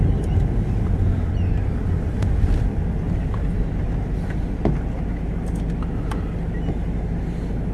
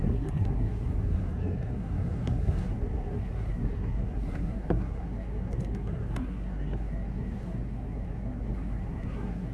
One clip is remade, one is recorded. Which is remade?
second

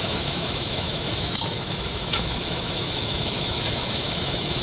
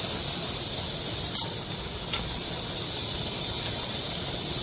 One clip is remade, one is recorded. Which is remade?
first